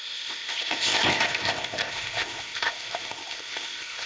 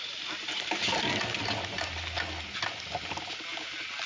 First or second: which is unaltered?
second